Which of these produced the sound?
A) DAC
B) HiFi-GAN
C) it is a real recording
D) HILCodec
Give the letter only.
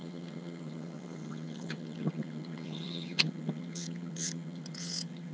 B